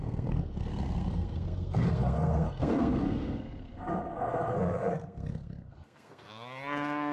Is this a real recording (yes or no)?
no